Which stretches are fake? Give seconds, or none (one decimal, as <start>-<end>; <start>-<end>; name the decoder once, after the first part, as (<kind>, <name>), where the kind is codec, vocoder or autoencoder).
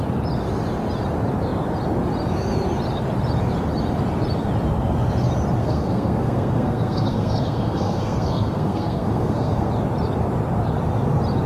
5.6-9.7 (codec, SNAC)